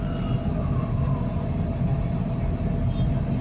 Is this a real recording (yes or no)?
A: yes